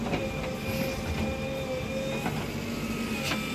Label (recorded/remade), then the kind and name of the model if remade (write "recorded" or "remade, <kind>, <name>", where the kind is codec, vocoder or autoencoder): recorded